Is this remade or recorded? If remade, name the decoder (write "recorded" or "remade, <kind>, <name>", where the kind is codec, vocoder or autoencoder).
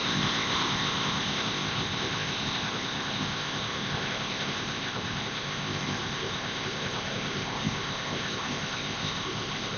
remade, codec, ZipCodec